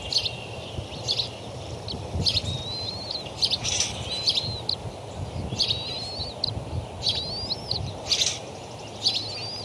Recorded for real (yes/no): yes